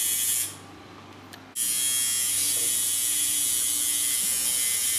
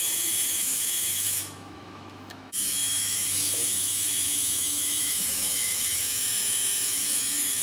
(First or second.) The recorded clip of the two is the first